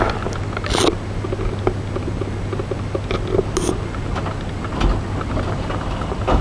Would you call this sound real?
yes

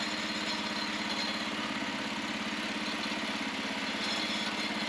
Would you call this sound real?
yes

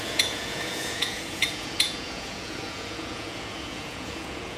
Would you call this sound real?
no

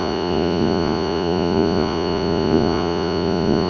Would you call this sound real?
no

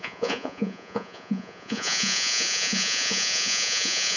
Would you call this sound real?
no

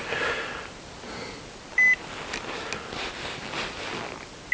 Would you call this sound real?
yes